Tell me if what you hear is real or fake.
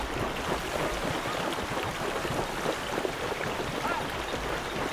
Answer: real